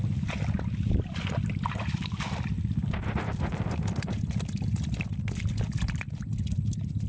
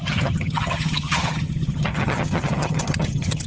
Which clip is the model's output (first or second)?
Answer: second